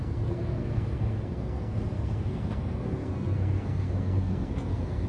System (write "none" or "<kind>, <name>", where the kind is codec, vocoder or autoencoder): codec, SNAC